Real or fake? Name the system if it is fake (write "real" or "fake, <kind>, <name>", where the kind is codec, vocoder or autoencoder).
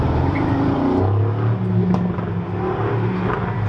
real